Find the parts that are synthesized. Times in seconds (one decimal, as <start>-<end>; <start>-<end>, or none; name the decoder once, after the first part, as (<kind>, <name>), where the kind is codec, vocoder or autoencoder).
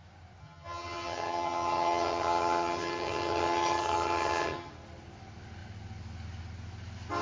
0.4-4.7 (vocoder, HiFi-GAN)